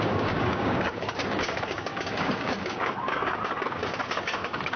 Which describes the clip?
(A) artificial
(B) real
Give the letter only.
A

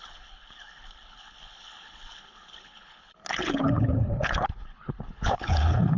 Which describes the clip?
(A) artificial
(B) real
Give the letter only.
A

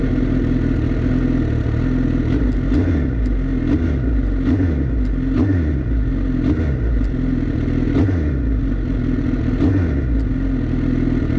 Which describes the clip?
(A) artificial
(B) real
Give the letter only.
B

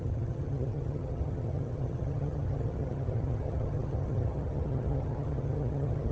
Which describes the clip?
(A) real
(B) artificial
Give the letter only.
B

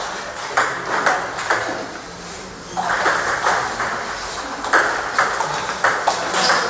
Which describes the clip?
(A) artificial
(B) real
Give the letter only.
B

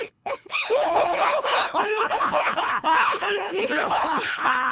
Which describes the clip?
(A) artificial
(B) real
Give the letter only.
A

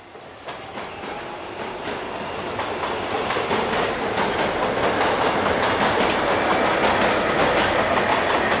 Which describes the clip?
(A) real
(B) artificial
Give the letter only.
A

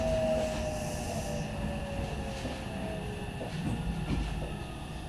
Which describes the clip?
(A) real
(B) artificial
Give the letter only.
A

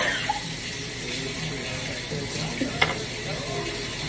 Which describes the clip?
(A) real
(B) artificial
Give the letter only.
A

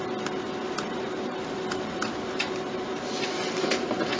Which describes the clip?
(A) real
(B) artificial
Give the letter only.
A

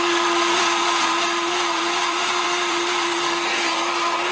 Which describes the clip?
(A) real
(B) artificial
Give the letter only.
B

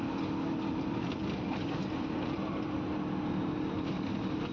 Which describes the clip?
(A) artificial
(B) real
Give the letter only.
B